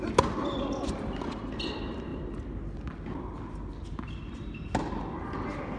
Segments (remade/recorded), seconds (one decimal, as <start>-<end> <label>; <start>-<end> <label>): 0.0-5.8 recorded